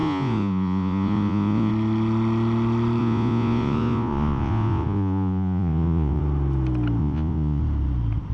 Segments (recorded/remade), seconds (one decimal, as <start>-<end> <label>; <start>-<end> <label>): 0.0-1.7 remade; 1.7-3.0 recorded; 3.0-6.2 remade; 6.2-7.0 recorded; 7.0-7.6 remade; 7.6-8.3 recorded